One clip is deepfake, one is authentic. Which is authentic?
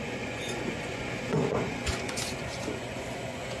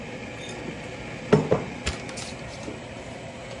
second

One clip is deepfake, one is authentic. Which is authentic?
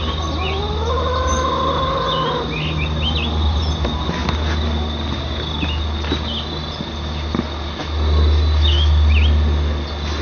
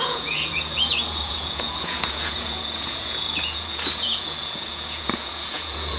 first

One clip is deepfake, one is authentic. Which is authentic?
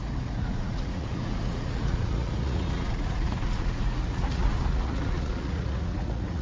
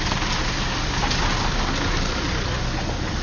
second